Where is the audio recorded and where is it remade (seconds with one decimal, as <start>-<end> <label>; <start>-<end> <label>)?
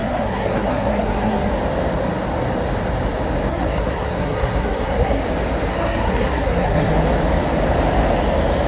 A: 0.0-1.5 remade; 1.5-3.5 recorded; 3.5-5.2 remade; 5.2-5.7 recorded; 5.7-6.9 remade; 6.9-8.7 recorded